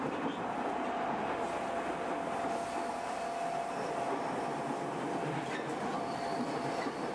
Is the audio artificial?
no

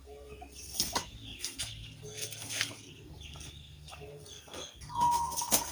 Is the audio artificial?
yes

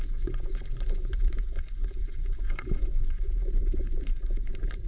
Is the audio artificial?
yes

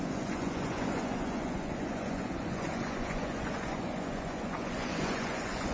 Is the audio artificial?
yes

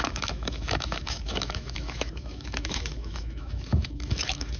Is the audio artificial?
yes